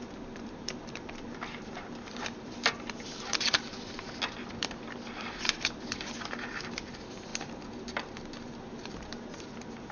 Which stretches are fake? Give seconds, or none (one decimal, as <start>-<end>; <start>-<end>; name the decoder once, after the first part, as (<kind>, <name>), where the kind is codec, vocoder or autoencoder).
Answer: 0.0-7.3 (vocoder, BigVGAN v2); 7.8-9.9

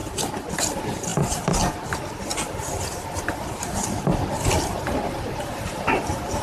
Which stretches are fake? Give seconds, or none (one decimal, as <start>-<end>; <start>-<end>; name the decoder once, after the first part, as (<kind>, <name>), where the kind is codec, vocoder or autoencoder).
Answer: 2.3-3.2 (vocoder, BigVGAN v2)

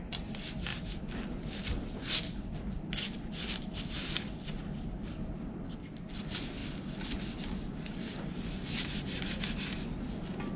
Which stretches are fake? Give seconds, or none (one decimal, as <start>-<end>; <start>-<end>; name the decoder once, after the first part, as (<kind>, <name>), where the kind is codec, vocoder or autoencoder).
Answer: none

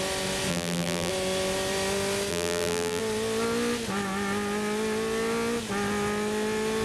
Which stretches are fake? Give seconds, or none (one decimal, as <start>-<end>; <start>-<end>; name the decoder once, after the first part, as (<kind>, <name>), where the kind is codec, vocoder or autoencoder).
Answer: 0.5-1.1 (vocoder, BigVGAN v2); 2.3-3.0

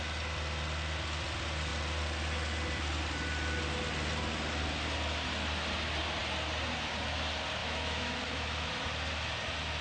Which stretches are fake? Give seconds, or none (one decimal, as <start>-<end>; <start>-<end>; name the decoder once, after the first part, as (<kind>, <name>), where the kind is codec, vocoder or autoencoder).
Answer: 7.6-8.7 (autoencoder, DAC-VAE)

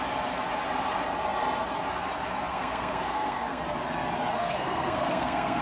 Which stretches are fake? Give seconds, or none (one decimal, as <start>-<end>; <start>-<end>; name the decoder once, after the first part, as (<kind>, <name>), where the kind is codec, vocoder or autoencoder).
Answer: 2.5-3.6 (codec, SNAC); 4.4-5.6

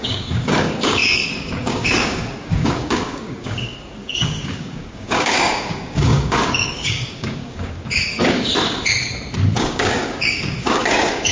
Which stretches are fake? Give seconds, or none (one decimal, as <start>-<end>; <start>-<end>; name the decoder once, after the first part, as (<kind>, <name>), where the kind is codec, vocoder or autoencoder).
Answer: 0.0-8.5 (codec, DAC); 9.6-11.3

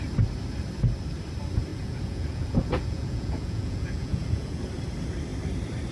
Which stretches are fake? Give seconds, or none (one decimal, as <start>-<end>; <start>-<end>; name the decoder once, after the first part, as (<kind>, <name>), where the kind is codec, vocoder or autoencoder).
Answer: 1.7-4.6 (vocoder, Vocos)